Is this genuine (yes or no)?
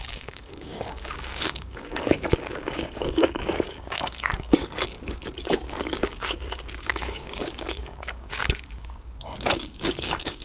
no